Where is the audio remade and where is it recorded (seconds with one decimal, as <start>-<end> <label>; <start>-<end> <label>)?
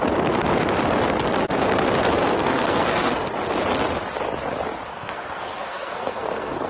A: 0.0-2.4 recorded; 2.4-3.2 remade; 3.2-4.9 recorded; 4.9-6.7 remade